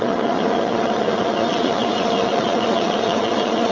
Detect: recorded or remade remade